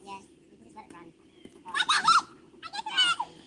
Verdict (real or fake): real